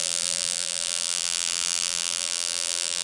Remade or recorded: remade